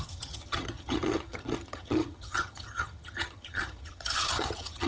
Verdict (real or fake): fake